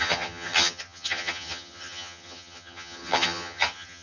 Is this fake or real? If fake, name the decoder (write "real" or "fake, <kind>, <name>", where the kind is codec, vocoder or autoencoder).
fake, vocoder, HiFi-GAN